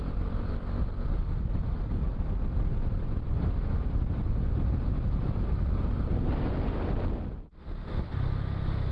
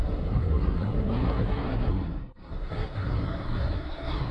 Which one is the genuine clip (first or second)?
first